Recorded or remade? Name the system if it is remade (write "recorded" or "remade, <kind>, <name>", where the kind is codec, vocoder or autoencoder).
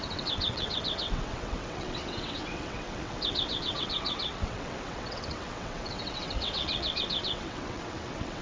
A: remade, vocoder, WaveNeXt